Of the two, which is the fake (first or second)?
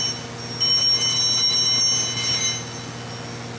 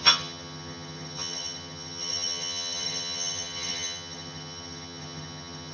second